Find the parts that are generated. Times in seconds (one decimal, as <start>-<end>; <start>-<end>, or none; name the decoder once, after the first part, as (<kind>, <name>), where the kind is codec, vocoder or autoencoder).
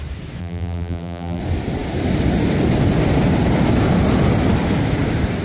0.4-1.4 (vocoder, BigVGAN v2)